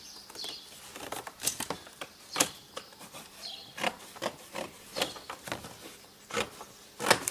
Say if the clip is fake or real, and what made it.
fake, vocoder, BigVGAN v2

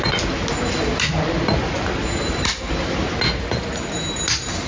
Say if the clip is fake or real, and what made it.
real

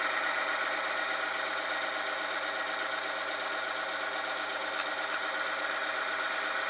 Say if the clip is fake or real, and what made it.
real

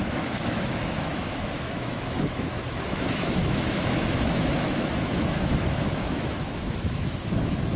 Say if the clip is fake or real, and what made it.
fake, autoencoder, DAC-VAE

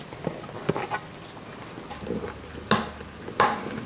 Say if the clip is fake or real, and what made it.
real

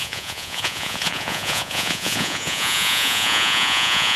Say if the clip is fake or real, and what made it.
fake, vocoder, Vocos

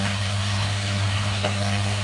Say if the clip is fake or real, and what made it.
fake, codec, SNAC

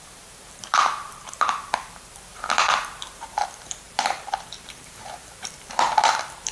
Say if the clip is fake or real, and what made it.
fake, vocoder, BigVGAN v2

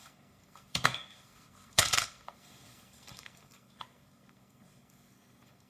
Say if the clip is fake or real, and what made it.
fake, codec, SNAC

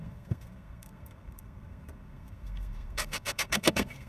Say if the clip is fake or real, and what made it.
fake, codec, SNAC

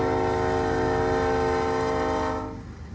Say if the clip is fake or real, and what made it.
real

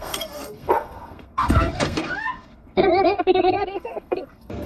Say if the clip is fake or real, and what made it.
fake, codec, SNAC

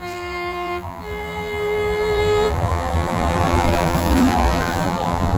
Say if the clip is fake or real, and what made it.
fake, vocoder, BigVGAN v2